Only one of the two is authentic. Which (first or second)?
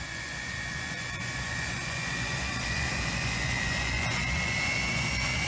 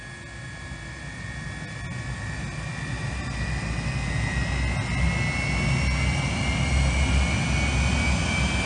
second